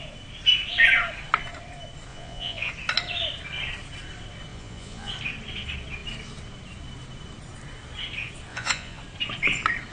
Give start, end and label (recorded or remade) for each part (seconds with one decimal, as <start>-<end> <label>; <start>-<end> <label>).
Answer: 0.0-2.1 recorded; 2.1-2.7 remade; 2.7-4.5 recorded; 4.5-5.1 remade; 5.1-8.5 recorded; 8.5-9.0 remade; 9.0-9.9 recorded